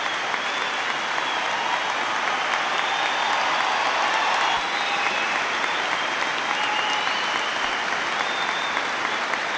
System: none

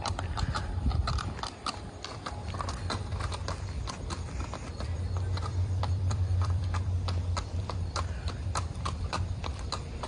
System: vocoder, BigVGAN v2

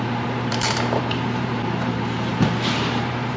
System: vocoder, BigVGAN v2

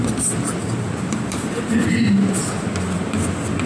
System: none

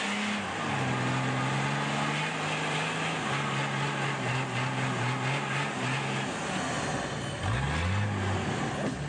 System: none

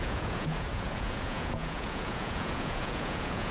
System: vocoder, Vocos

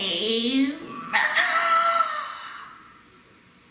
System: none